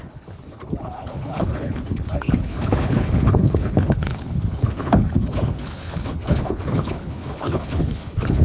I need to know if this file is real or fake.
fake